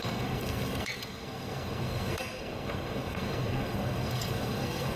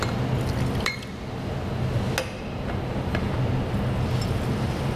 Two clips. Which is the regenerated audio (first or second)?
first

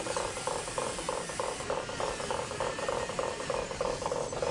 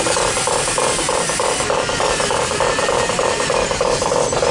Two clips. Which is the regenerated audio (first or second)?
first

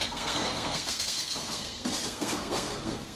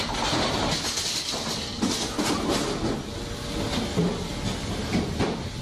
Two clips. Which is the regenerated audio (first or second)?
first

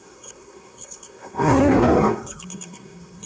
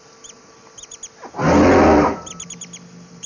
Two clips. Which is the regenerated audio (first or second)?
first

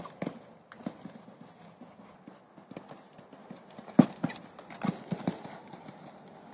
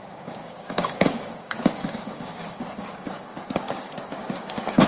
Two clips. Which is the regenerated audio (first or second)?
second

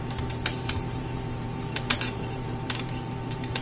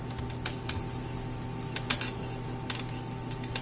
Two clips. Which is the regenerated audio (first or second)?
first